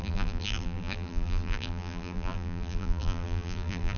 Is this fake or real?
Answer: fake